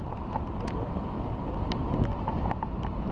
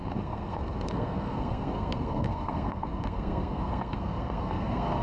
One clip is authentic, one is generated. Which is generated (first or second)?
second